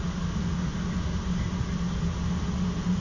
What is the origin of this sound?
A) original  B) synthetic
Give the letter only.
A